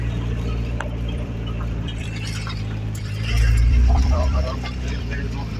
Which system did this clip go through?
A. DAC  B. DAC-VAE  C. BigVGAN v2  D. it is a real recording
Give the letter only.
C